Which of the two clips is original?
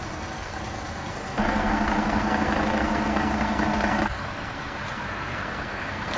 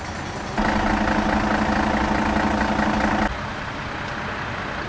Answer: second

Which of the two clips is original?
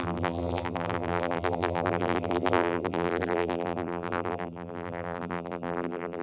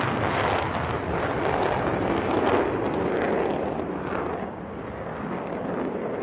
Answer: second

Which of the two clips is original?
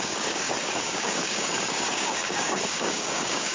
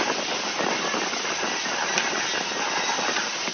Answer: second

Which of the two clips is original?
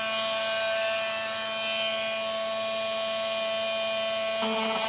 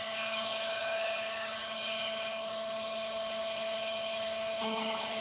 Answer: first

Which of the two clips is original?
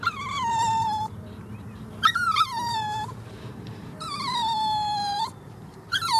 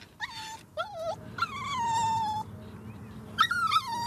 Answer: second